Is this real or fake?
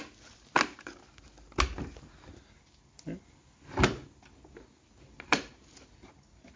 real